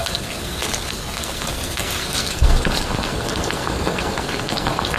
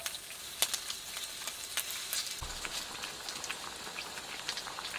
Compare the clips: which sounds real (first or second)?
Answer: second